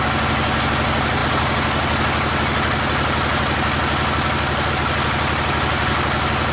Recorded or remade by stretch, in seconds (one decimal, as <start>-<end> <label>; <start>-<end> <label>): 0.0-6.5 recorded